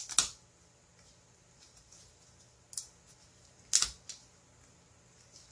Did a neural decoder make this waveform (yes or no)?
no